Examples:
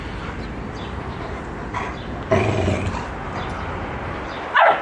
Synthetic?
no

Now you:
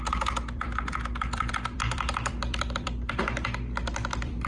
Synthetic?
yes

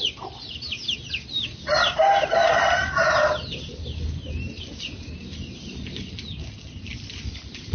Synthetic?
no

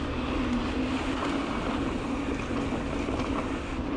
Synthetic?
no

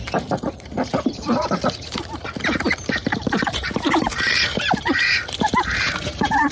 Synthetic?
yes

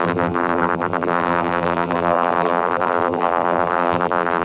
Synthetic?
yes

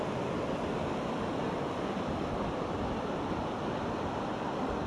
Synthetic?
no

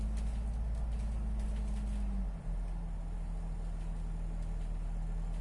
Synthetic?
no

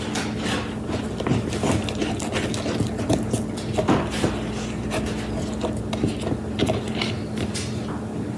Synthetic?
no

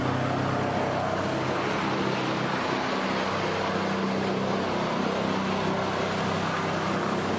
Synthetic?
no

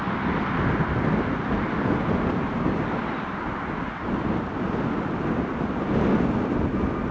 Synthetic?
no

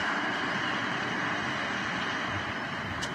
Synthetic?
yes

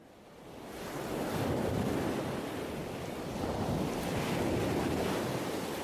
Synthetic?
no